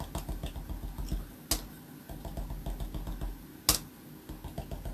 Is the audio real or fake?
real